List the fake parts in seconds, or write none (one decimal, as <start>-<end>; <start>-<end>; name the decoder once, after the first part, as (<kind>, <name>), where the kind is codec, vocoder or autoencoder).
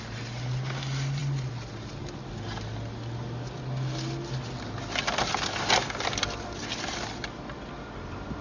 none